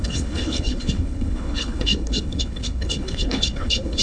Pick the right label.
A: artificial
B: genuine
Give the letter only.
A